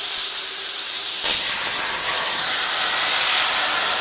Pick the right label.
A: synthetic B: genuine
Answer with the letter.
B